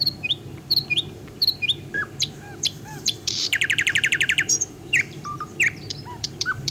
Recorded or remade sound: remade